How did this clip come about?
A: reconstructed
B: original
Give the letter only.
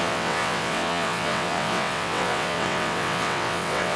A